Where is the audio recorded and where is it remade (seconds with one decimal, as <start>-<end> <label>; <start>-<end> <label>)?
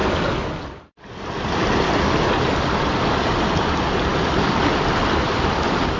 0.0-6.0 recorded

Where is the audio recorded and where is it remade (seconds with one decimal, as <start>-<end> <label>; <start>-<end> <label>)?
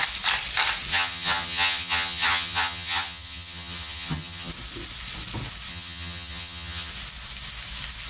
0.0-0.9 recorded; 0.9-4.5 remade; 4.5-5.7 recorded; 5.7-6.9 remade; 6.9-8.1 recorded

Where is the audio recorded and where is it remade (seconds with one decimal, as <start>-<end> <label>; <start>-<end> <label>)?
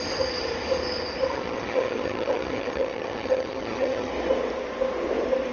0.0-1.3 recorded; 1.3-4.1 remade; 4.1-5.5 recorded